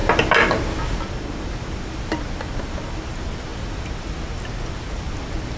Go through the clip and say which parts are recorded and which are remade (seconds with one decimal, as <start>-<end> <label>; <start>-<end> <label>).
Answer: 0.0-5.6 recorded